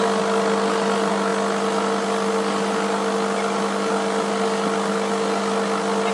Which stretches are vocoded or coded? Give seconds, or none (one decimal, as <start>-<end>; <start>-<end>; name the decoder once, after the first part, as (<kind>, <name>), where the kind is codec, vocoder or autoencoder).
none